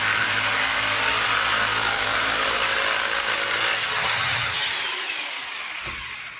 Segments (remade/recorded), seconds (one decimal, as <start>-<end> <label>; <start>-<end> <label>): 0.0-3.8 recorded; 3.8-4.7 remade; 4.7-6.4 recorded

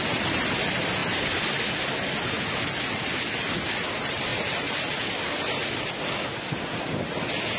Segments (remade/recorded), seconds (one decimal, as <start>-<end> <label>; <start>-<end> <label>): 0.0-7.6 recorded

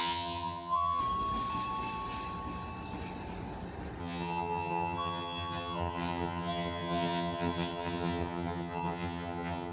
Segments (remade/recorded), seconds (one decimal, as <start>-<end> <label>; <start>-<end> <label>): 0.0-1.0 remade; 1.0-4.0 recorded; 4.0-9.7 remade

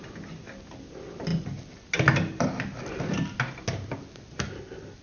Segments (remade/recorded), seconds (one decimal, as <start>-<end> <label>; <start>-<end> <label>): 0.0-5.0 recorded

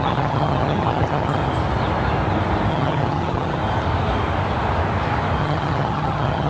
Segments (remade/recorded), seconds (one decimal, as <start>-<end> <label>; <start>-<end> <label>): 0.0-1.4 remade; 1.4-2.7 recorded; 2.7-3.6 remade; 3.6-5.4 recorded; 5.4-6.5 remade

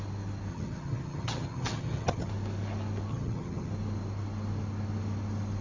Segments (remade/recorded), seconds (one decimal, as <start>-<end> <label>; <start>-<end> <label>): 0.0-0.5 recorded; 0.5-2.3 remade; 2.3-3.1 recorded; 3.1-3.7 remade; 3.7-5.6 recorded

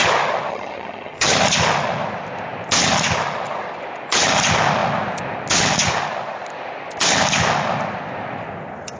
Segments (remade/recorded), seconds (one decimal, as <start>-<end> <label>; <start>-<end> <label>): 0.0-0.5 recorded; 0.5-1.3 remade; 1.3-9.0 recorded